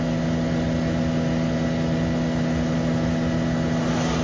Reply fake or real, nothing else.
real